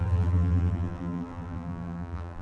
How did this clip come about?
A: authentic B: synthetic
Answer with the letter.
B